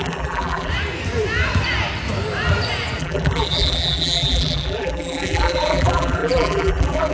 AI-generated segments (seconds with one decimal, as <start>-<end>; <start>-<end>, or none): 0.0-0.7; 3.0-7.1